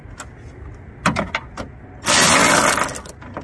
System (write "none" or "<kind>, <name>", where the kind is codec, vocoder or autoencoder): none